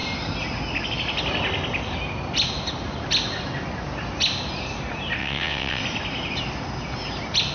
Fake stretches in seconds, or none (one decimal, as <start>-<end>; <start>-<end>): 5.2-5.8

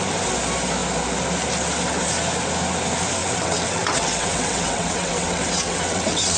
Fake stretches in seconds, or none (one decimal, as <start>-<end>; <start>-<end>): 3.2-6.4

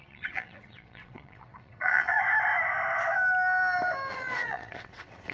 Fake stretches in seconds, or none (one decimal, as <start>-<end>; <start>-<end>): 0.0-2.2; 4.1-5.3